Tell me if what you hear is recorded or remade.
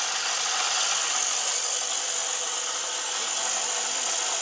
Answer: recorded